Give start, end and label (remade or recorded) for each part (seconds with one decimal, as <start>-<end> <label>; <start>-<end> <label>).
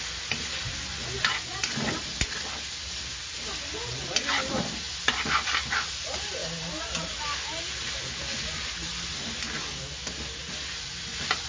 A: 0.0-11.5 recorded